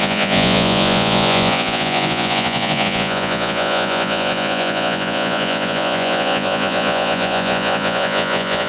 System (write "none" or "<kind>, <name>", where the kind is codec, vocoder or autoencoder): vocoder, Vocos